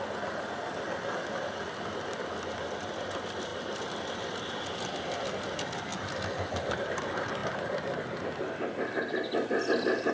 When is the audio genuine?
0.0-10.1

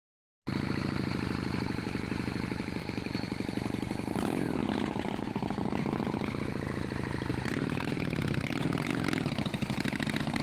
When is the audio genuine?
0.0-7.3; 8.9-10.4

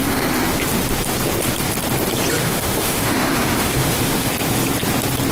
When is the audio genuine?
0.0-2.4; 4.3-5.3

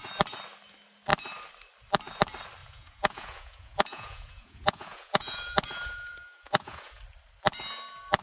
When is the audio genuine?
0.0-2.6; 7.0-8.2

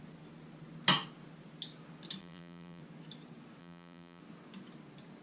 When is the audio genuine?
0.0-2.2; 2.8-3.6; 4.2-5.2

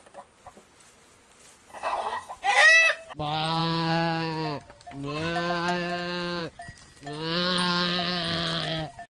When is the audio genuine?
0.0-1.7; 2.3-9.1